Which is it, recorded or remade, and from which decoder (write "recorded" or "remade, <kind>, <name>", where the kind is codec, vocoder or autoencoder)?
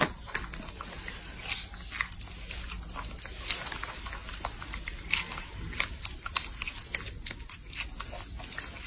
recorded